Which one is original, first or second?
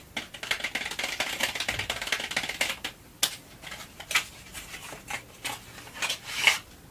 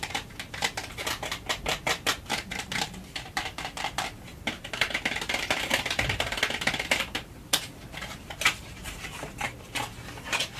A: first